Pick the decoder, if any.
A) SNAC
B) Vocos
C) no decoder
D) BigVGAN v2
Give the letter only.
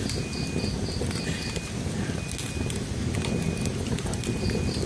C